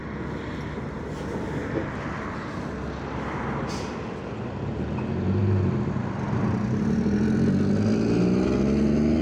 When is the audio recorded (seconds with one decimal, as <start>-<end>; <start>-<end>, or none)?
0.0-9.2